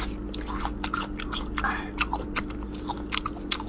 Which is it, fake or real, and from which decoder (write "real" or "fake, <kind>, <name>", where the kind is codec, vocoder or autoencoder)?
real